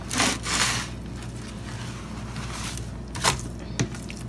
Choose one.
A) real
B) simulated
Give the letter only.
A